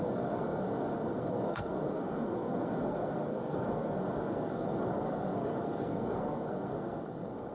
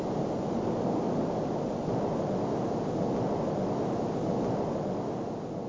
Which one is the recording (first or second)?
second